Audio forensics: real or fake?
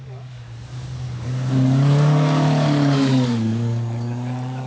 fake